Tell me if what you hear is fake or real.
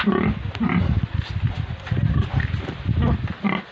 real